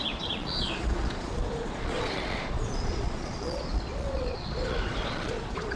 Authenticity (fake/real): fake